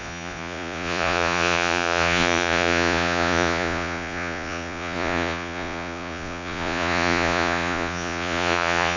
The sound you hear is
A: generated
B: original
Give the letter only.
A